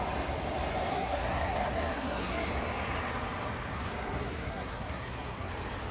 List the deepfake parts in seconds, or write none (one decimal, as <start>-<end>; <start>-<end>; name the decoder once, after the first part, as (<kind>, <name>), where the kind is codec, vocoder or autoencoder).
0.9-2.5 (codec, SNAC); 3.7-5.5